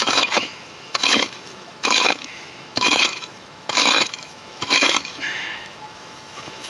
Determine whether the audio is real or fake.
fake